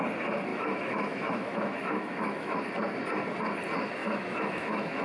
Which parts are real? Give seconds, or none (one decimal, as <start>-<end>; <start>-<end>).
0.0-0.5; 2.6-4.0